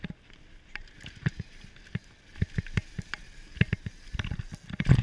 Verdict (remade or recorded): recorded